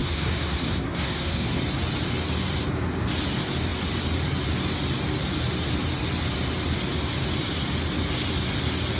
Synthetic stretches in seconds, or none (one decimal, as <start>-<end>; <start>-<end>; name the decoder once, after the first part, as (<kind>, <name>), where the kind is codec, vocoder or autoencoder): 0.0-1.6 (codec, SNAC)